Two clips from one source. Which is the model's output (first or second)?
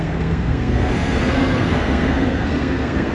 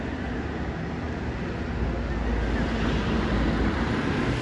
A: first